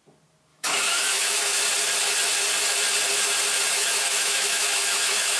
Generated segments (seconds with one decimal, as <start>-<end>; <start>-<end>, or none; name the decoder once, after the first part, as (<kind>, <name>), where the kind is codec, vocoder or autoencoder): 0.5-1.6 (autoencoder, DAC-VAE); 3.7-5.4